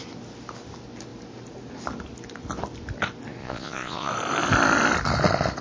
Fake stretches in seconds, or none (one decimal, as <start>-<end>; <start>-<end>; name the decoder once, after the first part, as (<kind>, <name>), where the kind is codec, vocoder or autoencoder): 3.4-4.1 (vocoder, Vocos)